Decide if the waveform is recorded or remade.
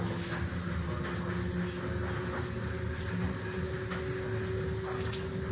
recorded